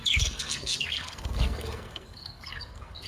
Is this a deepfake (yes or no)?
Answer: yes